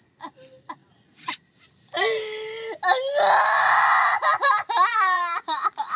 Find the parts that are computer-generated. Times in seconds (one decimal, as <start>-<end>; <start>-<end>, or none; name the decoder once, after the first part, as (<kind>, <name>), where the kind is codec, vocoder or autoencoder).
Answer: 4.9-6.0 (vocoder, Vocos)